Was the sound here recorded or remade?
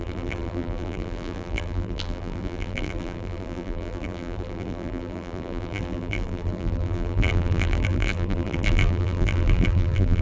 remade